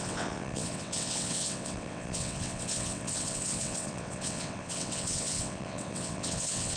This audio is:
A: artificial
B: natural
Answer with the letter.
A